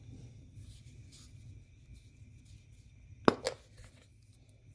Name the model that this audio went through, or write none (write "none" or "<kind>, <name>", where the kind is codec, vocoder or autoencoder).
none